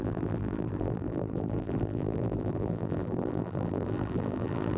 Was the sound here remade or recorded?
remade